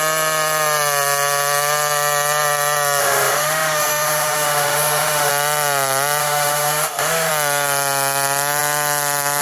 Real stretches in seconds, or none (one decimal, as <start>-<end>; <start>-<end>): 0.0-3.0; 5.3-6.2; 7.3-9.4